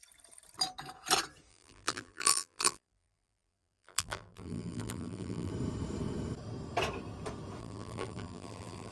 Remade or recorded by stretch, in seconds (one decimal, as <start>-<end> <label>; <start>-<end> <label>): 0.0-1.5 recorded; 1.5-5.5 remade; 5.5-7.6 recorded; 7.6-8.9 remade